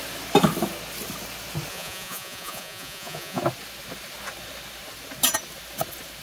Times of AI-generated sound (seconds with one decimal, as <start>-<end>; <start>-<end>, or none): 1.7-3.4